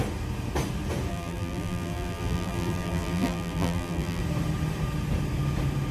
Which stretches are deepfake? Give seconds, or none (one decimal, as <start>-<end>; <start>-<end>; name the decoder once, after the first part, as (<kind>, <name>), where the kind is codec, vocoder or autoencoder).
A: 1.1-4.2 (vocoder, BigVGAN v2)